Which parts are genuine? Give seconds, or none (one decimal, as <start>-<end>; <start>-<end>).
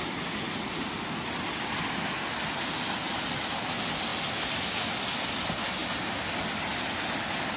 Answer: 0.0-7.6